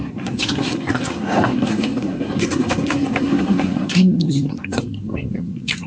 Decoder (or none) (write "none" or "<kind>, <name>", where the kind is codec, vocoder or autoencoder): codec, SNAC